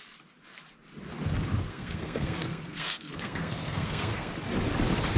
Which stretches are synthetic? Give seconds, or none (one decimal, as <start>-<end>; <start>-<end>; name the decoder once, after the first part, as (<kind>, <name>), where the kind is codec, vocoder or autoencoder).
1.7-4.3 (codec, SNAC)